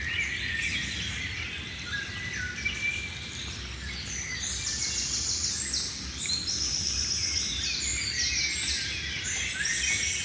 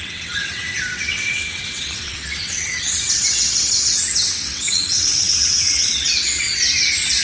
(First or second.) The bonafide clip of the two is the first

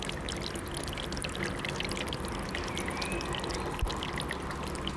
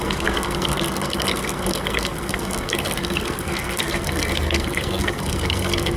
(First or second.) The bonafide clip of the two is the first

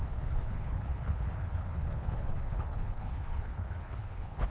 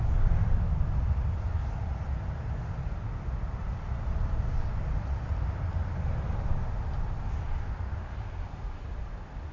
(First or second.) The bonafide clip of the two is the second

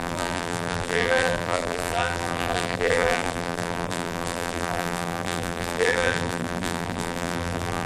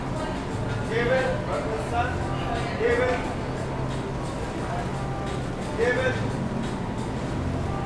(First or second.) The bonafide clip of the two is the second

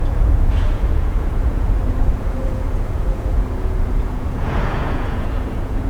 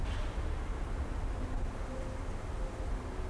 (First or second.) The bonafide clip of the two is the second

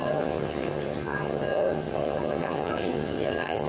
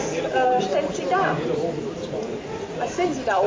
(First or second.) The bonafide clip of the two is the second